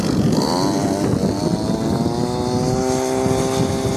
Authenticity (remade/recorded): recorded